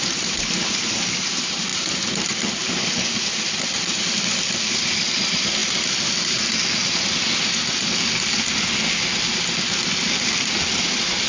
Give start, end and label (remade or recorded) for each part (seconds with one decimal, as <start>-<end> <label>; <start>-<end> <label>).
0.0-4.3 remade; 4.3-5.1 recorded; 5.1-5.6 remade; 5.6-10.6 recorded; 10.6-11.3 remade